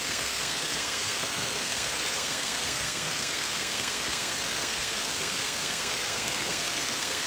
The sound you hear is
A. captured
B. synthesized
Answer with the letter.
B